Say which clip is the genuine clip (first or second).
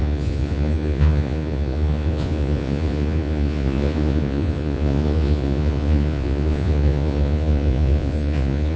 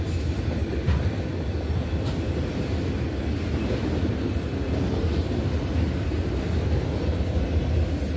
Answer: second